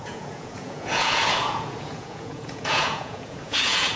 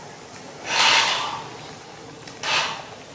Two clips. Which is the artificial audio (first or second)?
first